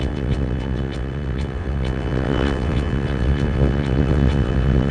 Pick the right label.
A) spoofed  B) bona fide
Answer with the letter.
A